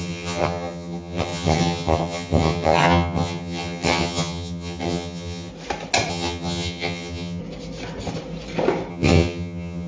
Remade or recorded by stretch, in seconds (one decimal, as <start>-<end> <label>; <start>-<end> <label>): 0.0-5.5 remade; 5.5-6.1 recorded; 6.1-7.4 remade; 7.4-8.9 recorded; 8.9-9.9 remade